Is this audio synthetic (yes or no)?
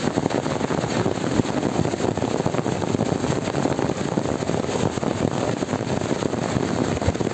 no